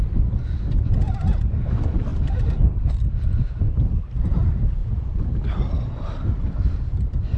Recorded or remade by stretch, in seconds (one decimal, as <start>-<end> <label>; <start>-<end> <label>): 0.0-4.8 recorded; 4.8-5.7 remade; 5.7-7.4 recorded